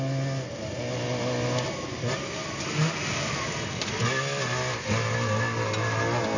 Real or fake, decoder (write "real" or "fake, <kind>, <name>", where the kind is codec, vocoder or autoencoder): real